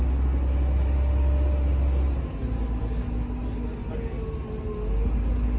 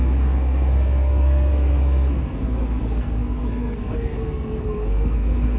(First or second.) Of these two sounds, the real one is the first